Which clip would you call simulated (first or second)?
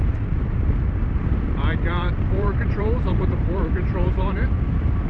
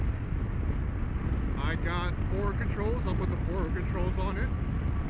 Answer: first